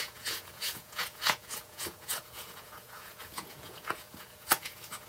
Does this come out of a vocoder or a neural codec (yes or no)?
yes